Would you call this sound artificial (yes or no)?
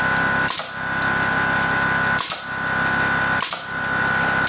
no